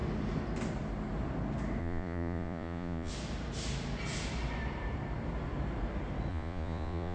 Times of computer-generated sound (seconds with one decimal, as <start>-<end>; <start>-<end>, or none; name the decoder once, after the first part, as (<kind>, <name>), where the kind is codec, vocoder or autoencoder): 1.8-3.1 (vocoder, Vocos); 6.3-7.1